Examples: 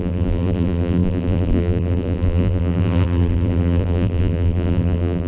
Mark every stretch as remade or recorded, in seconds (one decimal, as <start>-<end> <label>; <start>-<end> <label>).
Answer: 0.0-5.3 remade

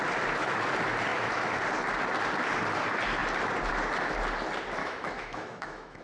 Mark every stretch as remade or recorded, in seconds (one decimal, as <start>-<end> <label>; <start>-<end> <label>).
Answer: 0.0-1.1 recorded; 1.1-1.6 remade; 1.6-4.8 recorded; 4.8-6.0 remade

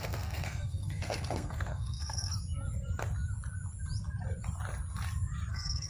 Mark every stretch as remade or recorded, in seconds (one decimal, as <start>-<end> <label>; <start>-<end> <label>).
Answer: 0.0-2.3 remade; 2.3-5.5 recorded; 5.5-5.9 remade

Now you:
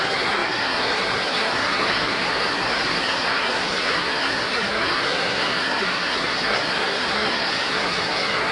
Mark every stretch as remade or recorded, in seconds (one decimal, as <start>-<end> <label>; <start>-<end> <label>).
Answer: 0.0-8.5 remade